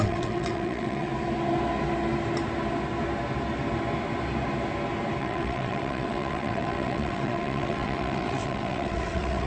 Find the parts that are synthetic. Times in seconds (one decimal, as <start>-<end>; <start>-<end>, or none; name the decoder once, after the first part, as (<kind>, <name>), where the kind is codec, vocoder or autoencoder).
0.0-1.1 (vocoder, WaveNeXt); 5.2-9.5